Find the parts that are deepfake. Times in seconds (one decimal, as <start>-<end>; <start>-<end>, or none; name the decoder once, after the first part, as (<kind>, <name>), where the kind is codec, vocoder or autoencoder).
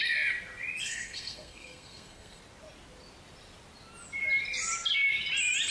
0.8-2.4 (codec, SNAC)